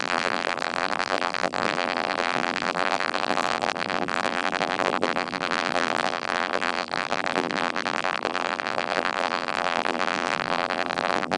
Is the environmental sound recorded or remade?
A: remade